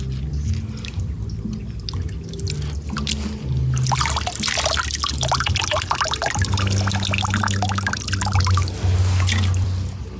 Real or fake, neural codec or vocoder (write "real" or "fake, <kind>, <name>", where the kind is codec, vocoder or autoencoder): real